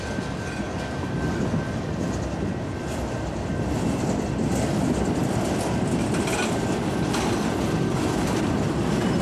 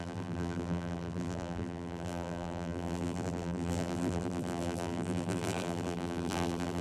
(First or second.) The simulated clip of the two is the second